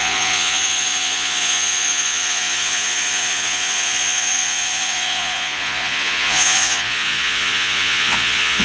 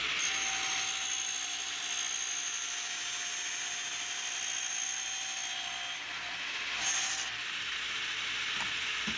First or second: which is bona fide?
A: second